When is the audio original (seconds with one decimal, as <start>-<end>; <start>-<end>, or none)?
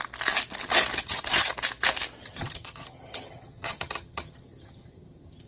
0.0-1.0; 1.5-2.2